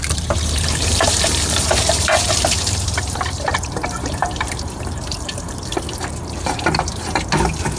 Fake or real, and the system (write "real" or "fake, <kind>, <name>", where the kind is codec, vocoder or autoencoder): fake, vocoder, BigVGAN v2